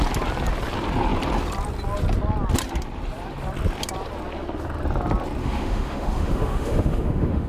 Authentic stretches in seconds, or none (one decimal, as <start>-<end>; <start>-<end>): 0.0-5.4